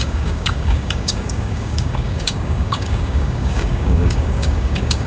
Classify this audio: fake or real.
fake